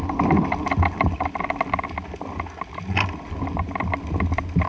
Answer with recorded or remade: recorded